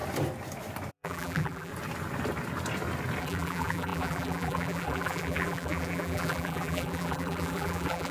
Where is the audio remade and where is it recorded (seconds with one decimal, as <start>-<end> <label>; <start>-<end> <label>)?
0.0-0.9 recorded; 0.9-1.7 remade; 1.7-3.2 recorded; 3.2-8.1 remade